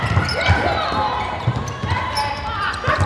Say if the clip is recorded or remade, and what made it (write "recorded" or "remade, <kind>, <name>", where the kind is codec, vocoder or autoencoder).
recorded